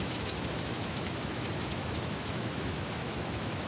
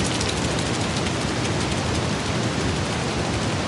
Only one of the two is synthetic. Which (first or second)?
first